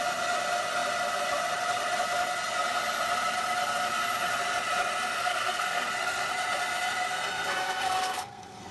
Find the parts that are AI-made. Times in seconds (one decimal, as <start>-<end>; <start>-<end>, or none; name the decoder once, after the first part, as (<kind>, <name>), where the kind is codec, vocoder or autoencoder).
5.1-6.3 (codec, SNAC); 7.0-8.7